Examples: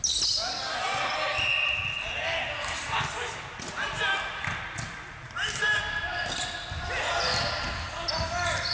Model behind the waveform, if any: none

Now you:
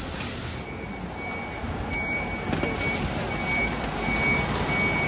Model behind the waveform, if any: none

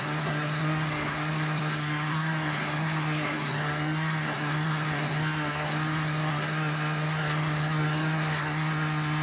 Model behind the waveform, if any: codec, SNAC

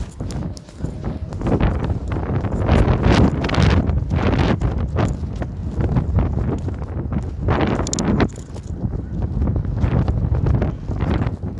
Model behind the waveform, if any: none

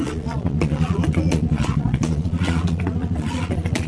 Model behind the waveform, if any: vocoder, Vocos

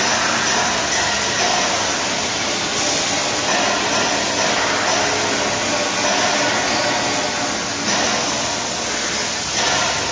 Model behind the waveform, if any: none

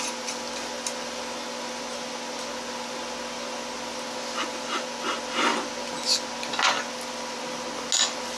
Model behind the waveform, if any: none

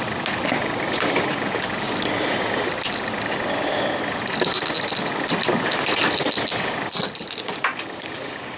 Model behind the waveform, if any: none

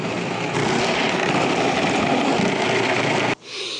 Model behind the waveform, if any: none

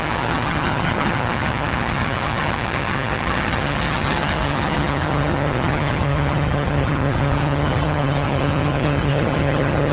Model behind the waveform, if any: vocoder, HiFi-GAN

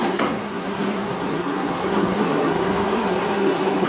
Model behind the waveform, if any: codec, SNAC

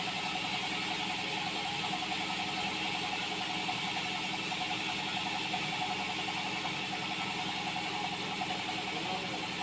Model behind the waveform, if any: none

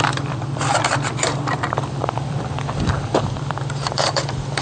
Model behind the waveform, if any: vocoder, BigVGAN v2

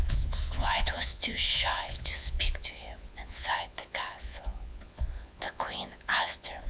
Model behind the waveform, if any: vocoder, Vocos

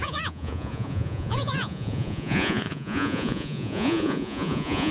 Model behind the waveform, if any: vocoder, Vocos